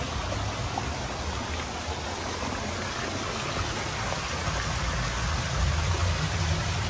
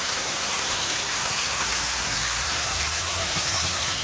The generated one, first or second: second